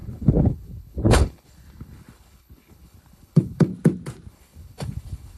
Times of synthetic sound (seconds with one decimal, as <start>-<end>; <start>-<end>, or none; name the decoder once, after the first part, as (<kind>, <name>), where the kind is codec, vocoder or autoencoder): 0.0-3.7 (codec, HILCodec); 4.3-5.4